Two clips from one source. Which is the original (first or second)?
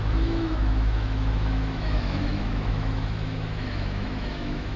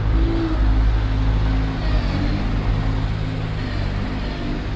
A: second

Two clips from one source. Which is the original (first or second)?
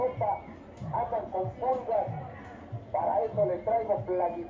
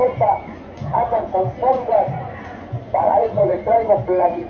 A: first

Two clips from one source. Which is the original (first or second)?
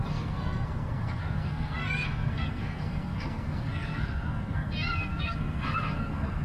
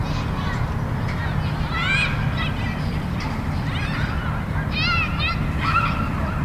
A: second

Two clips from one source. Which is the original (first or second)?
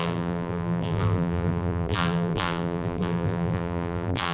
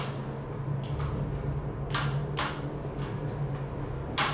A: second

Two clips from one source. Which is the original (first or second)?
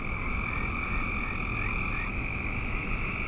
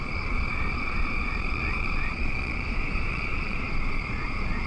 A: first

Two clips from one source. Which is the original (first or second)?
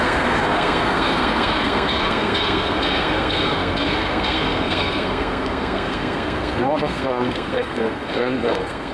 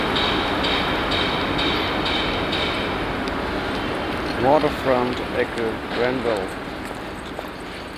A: second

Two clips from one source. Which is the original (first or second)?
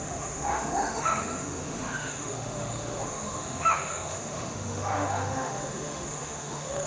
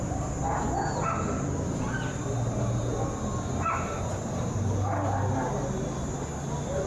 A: second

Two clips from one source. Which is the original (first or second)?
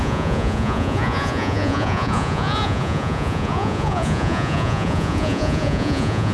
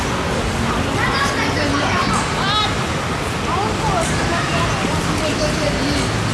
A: second